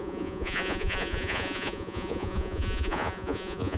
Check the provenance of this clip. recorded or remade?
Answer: remade